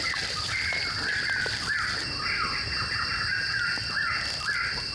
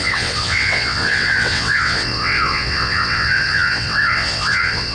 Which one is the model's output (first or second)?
second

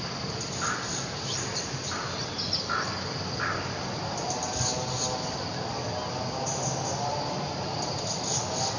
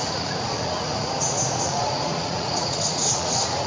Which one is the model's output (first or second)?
second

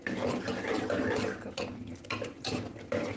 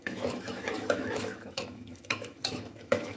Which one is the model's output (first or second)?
second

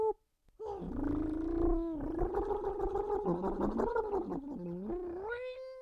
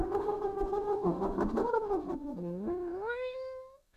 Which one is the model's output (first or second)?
second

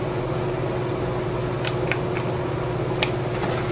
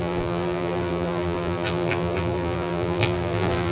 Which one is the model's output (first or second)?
second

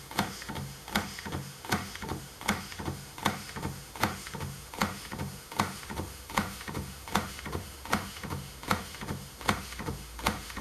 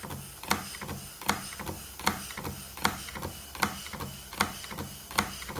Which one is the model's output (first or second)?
first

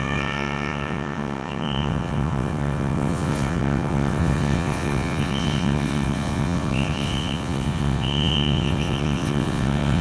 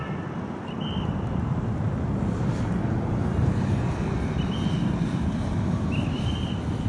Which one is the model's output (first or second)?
first